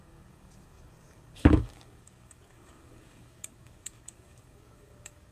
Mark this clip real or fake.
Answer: fake